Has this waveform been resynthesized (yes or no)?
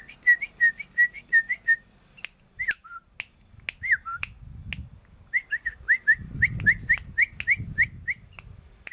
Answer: no